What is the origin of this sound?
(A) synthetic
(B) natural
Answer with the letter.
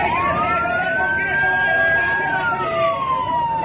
B